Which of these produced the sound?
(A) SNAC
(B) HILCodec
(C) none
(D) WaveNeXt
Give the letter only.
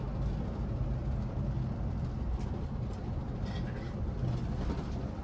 C